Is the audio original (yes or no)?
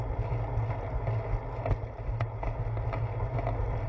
yes